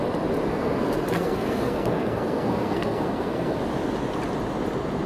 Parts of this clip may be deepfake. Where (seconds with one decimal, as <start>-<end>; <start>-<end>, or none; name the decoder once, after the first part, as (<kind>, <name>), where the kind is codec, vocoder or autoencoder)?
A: 0.5-3.6 (codec, SNAC)